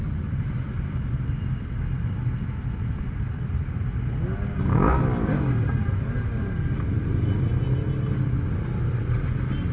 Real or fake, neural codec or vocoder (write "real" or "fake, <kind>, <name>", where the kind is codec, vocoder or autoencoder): real